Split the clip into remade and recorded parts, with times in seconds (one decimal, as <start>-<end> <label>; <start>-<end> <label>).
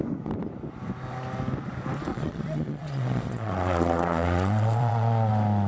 0.0-2.1 recorded; 2.1-5.3 remade; 5.3-5.7 recorded